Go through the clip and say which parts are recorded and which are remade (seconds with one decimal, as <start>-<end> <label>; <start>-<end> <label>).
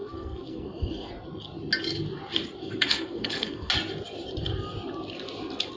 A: 0.0-1.1 remade; 1.1-2.6 recorded; 2.6-3.7 remade; 3.7-5.8 recorded